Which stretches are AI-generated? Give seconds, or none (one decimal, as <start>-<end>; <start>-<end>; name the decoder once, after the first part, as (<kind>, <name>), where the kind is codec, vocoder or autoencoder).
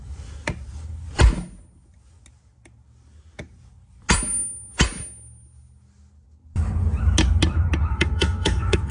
7.9-8.9 (codec, SNAC)